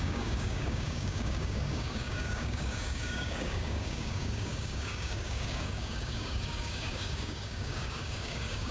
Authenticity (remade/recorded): remade